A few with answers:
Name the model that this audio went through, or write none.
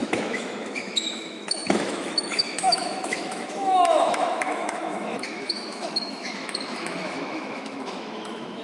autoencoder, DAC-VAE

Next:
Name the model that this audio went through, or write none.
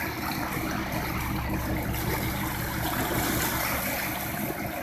none